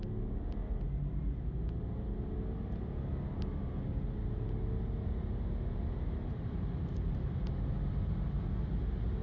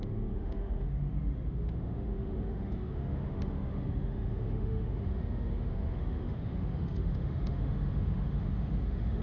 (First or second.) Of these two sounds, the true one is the first